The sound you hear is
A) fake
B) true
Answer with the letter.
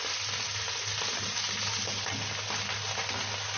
B